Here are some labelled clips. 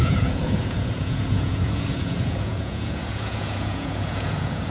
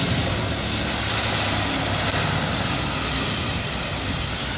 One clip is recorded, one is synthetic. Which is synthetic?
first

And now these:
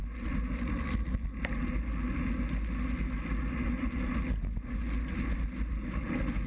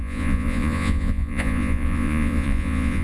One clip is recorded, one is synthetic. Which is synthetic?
second